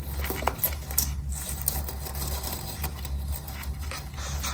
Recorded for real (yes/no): yes